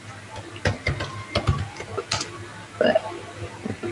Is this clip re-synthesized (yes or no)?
no